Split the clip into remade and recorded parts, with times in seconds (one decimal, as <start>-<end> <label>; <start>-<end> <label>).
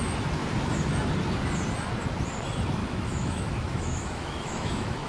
0.0-2.8 recorded; 2.8-5.1 remade